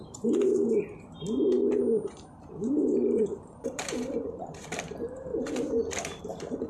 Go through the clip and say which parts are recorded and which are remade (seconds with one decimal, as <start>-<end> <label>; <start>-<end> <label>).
0.0-5.3 remade; 5.3-6.2 recorded; 6.2-6.7 remade